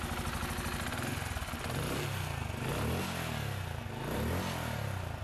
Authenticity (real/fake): real